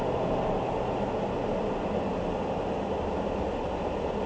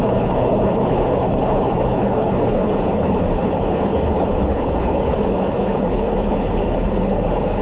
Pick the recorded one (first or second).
first